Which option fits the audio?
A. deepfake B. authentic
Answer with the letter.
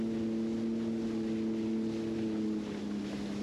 B